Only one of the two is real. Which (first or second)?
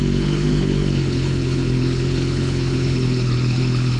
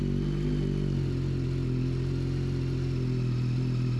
second